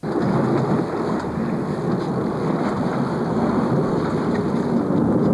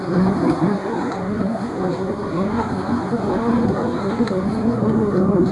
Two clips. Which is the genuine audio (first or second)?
first